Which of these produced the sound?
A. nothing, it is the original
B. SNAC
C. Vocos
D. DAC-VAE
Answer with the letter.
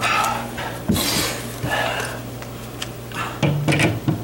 A